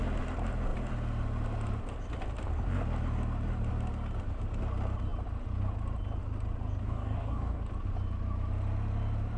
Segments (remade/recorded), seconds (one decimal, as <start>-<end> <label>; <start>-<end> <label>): 0.0-6.8 recorded; 6.8-7.6 remade; 7.6-9.4 recorded